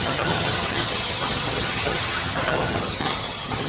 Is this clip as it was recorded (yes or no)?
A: no